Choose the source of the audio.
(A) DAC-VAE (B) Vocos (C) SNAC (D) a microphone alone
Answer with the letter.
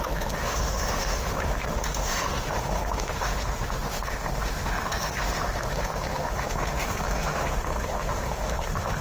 A